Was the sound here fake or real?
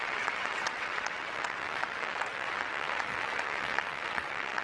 fake